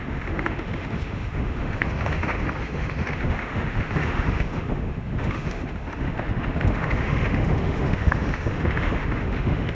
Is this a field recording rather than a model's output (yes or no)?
no